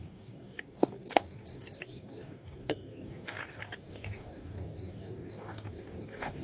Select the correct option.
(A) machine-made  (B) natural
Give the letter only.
A